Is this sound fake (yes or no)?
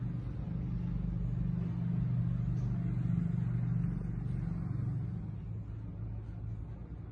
no